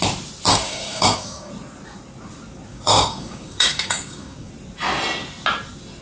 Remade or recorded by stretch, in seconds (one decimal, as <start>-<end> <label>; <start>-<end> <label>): 0.0-0.5 recorded; 0.5-1.5 remade; 1.5-2.7 recorded; 2.7-4.5 remade; 4.5-6.0 recorded